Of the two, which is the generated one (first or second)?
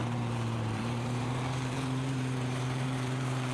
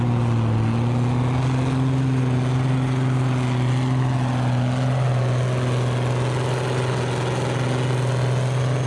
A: first